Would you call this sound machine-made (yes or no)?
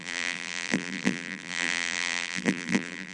yes